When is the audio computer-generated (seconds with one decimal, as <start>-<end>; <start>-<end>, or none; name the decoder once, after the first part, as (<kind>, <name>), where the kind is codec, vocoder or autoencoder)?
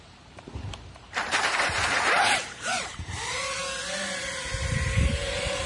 0.0-3.6 (vocoder, BigVGAN v2); 4.7-5.7